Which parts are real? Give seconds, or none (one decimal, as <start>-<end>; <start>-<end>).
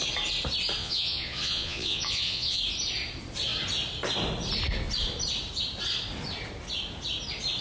0.0-0.8; 2.6-7.6